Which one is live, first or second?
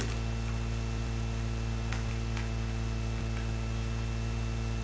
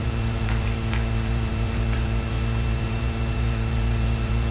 first